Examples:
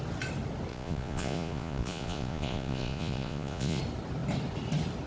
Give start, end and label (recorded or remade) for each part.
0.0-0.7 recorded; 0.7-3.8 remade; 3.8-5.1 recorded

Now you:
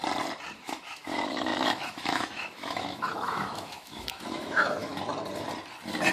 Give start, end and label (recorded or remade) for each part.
0.0-0.6 recorded; 0.6-4.9 remade; 4.9-6.1 recorded

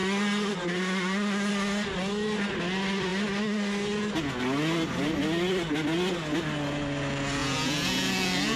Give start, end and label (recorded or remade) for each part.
0.0-7.4 recorded; 7.4-8.6 remade

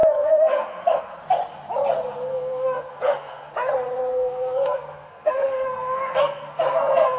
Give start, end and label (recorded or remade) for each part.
0.0-1.2 remade; 1.2-2.3 recorded; 2.3-3.5 remade; 3.5-4.1 recorded; 4.1-7.2 remade